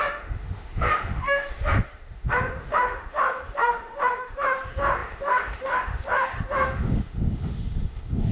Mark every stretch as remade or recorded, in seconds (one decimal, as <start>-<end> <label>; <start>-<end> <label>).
0.0-8.3 remade